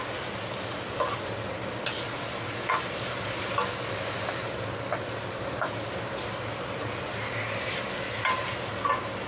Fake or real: real